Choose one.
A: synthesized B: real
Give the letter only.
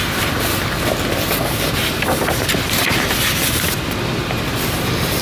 A